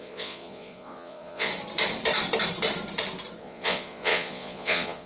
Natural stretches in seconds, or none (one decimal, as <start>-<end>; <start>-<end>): 1.5-3.4